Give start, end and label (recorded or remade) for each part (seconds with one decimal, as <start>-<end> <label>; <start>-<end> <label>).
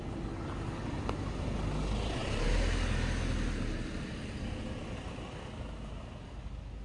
0.0-6.8 recorded